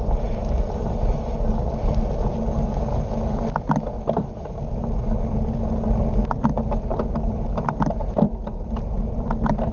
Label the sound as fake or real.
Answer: real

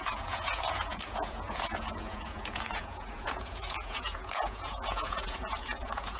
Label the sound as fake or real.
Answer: fake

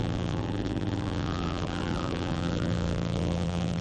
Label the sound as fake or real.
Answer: fake